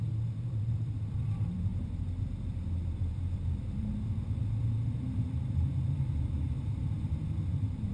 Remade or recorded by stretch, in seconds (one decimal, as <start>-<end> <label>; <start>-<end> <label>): 0.0-7.9 remade